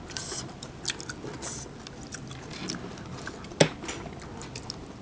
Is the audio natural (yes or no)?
yes